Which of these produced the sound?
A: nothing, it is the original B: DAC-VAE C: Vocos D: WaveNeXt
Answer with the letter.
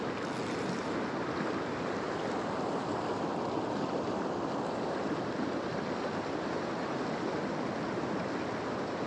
A